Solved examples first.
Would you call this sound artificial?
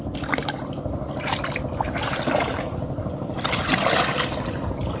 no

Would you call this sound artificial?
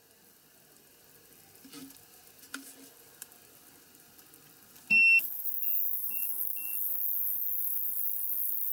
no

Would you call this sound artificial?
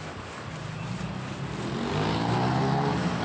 no